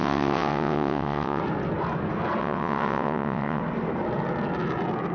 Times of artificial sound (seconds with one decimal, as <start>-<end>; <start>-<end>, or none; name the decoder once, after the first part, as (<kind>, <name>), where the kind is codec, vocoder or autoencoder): 0.0-1.4 (vocoder, WaveNeXt); 2.4-3.6